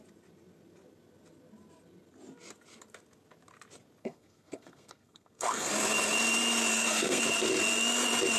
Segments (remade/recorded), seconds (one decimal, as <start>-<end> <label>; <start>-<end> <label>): 0.0-4.0 recorded; 4.0-5.7 remade; 5.7-6.7 recorded; 6.7-7.2 remade; 7.2-8.4 recorded